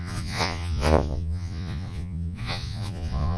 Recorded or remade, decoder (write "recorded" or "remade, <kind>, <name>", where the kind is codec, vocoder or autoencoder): remade, vocoder, Vocos